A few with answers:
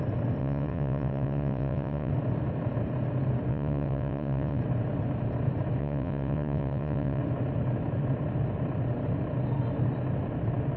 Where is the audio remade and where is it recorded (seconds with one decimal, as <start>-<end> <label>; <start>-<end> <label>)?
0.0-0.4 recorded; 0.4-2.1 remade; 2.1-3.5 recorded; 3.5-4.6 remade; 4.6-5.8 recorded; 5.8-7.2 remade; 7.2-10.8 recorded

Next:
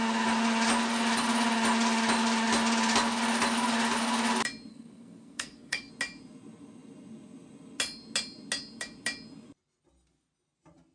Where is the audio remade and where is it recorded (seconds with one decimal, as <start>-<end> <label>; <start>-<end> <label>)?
0.0-4.7 recorded; 4.7-5.9 remade; 5.9-10.9 recorded

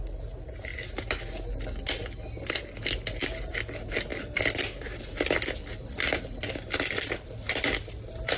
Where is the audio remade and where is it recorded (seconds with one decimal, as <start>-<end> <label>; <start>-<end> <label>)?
0.0-8.4 recorded

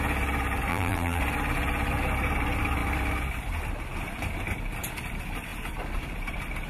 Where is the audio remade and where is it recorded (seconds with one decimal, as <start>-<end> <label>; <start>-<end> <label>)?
0.0-0.7 recorded; 0.7-1.2 remade; 1.2-6.7 recorded